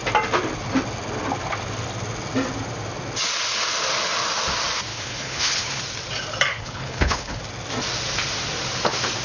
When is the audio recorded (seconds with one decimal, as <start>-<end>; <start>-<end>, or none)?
0.0-4.9; 5.8-6.5; 7.4-9.2